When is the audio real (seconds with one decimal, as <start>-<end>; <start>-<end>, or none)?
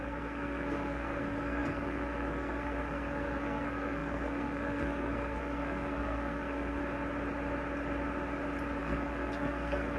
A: 6.8-8.8